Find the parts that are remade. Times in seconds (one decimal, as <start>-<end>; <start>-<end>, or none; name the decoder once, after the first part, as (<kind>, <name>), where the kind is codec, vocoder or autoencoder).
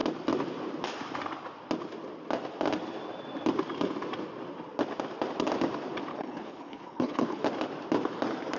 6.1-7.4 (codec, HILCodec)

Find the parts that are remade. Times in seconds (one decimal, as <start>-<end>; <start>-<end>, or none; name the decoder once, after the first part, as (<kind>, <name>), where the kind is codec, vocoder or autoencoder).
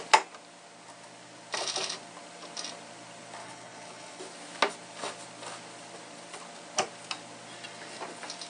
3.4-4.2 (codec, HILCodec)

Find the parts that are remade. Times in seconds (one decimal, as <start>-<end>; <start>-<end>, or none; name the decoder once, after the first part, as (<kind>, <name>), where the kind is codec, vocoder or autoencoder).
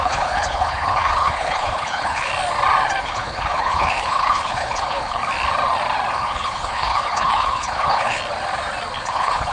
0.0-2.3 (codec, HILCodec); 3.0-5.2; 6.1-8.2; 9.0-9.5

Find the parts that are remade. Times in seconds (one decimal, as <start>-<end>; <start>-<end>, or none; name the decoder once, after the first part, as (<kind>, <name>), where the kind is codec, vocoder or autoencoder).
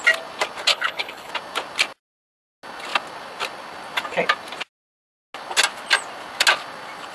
0.7-1.3 (codec, HILCodec)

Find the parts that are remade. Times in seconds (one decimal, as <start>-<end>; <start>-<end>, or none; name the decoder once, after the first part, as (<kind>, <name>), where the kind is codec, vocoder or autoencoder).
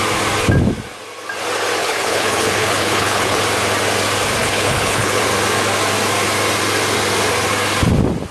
1.8-3.4 (codec, HILCodec); 4.4-5.2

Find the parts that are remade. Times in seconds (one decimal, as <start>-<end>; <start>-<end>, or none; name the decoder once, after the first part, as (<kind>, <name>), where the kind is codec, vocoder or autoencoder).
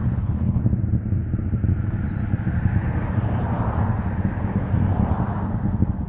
0.0-0.6 (codec, HILCodec)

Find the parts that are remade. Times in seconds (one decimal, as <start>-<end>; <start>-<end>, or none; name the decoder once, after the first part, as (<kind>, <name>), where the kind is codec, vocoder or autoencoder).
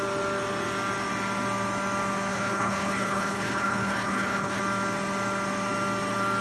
2.3-4.6 (codec, HILCodec)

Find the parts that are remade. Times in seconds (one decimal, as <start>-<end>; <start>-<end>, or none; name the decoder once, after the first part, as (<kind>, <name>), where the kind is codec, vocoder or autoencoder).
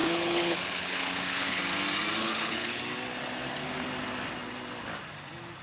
0.0-1.6 (codec, HILCodec); 2.2-2.8